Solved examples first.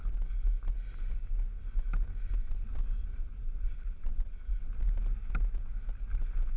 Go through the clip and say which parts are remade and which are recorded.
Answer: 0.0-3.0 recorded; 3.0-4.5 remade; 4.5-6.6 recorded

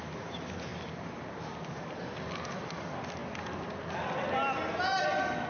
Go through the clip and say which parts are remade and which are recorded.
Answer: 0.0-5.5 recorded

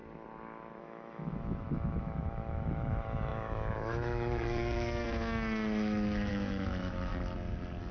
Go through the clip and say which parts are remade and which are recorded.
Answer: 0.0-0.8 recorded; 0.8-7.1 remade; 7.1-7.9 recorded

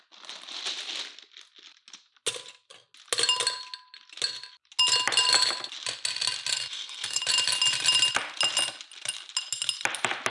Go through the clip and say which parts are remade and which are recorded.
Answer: 0.0-6.5 recorded; 6.5-7.2 remade; 7.2-10.3 recorded